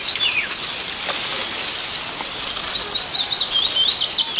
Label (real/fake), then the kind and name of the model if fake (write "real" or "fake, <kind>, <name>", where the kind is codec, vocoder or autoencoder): real